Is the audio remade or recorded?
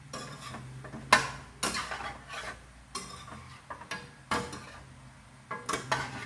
recorded